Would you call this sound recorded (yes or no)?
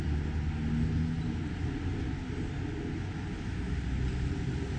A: yes